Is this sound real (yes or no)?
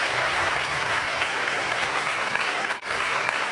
no